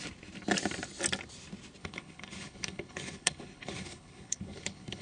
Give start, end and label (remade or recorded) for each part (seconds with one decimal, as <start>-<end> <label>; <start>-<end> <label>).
0.0-1.8 recorded; 1.8-5.0 remade

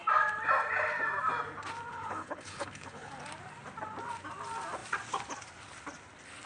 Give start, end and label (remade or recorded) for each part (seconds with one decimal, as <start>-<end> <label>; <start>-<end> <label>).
0.0-1.9 recorded; 1.9-3.1 remade; 3.1-6.5 recorded